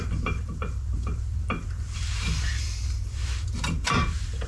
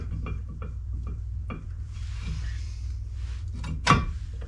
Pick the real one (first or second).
second